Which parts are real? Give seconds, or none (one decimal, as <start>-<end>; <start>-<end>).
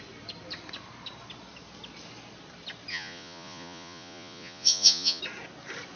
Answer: 0.0-2.9; 5.2-6.0